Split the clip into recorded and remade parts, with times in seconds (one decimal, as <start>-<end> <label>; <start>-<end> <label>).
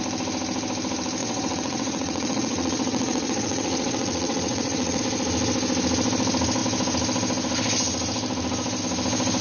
0.0-1.2 recorded; 1.2-5.0 remade; 5.0-9.4 recorded